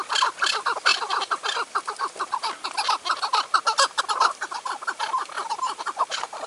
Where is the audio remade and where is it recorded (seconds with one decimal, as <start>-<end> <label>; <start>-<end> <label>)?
0.0-6.5 recorded